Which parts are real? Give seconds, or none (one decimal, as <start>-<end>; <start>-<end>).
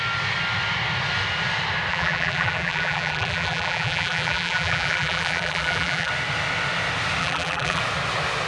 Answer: 0.0-1.9; 6.1-7.2; 7.8-8.5